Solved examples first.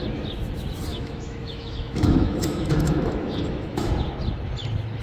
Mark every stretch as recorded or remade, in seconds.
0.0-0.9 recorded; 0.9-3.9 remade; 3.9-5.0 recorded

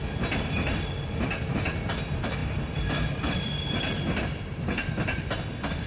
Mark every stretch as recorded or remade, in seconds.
0.0-5.9 recorded